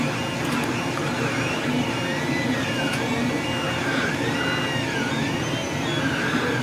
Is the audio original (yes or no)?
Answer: yes